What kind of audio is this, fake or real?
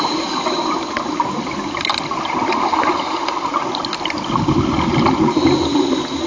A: real